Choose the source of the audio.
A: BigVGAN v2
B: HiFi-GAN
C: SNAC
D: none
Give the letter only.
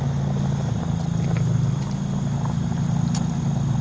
D